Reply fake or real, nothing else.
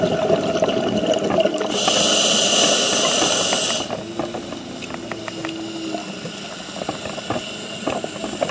real